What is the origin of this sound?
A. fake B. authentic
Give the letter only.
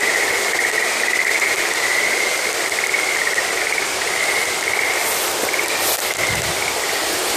B